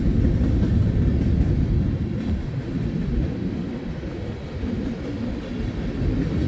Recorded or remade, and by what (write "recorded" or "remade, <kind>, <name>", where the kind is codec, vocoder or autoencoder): recorded